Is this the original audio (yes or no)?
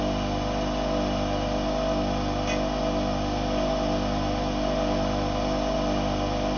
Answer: yes